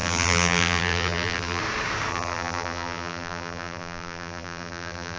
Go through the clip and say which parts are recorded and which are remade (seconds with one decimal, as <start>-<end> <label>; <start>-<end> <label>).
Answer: 0.0-1.6 remade; 1.6-2.1 recorded; 2.1-5.2 remade